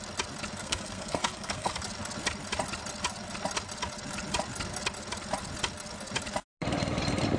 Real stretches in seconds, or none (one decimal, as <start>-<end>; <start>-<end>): 0.0-0.6; 1.8-7.4